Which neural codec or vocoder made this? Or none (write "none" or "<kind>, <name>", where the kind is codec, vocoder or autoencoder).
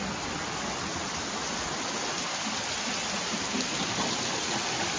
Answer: none